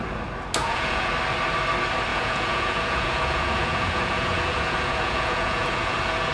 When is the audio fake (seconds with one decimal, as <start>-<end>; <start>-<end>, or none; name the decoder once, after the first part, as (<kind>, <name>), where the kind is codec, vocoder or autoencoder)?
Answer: 0.6-1.1 (vocoder, Vocos); 2.1-6.3